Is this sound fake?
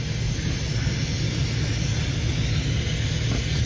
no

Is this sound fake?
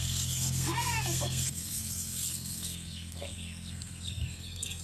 yes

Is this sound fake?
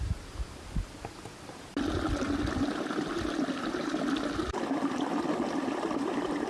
no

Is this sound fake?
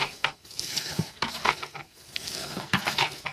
yes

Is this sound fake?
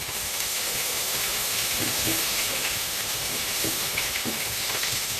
yes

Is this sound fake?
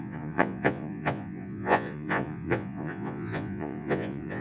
yes